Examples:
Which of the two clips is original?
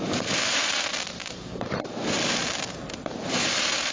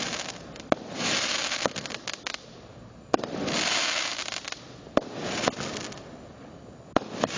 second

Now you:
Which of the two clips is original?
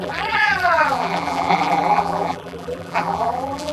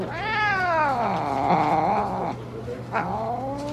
second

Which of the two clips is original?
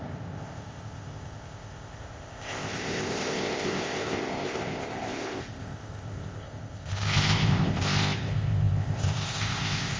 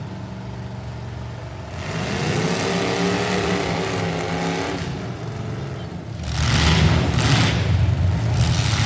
second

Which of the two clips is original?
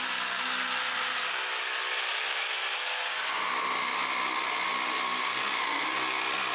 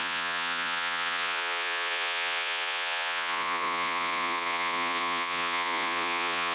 first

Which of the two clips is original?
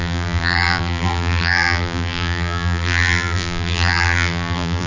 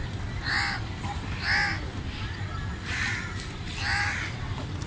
second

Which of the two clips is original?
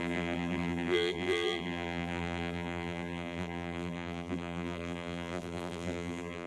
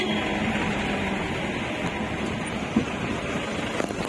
second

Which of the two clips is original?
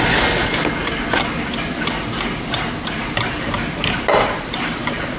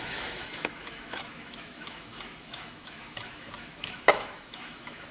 first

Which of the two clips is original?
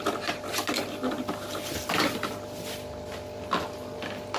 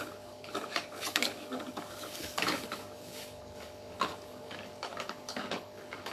first